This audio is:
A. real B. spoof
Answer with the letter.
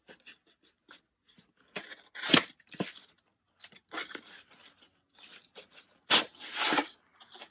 A